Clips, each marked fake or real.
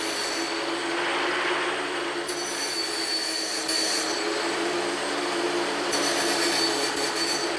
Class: real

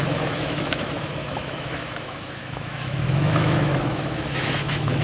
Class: fake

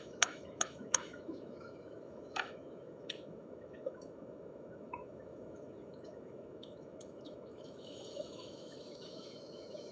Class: fake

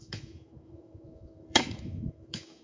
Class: fake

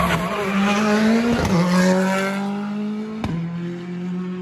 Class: real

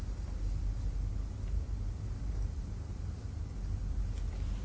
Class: real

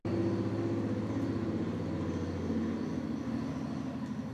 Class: real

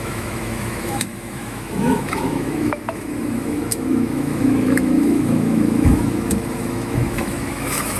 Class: fake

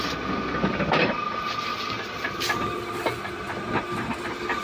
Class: real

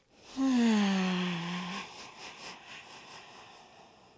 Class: real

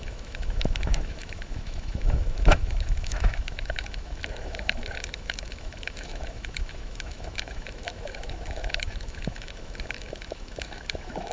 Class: fake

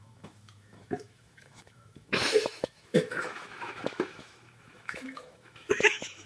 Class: fake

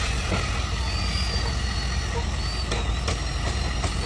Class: real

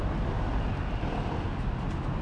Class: real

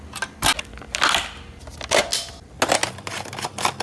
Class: real